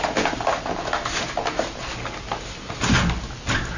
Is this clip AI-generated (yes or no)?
no